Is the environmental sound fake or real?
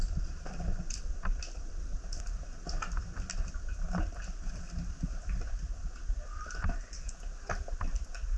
real